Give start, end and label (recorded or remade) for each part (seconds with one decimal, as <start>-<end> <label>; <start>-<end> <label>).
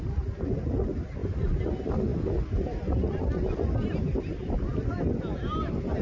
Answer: 0.0-6.0 recorded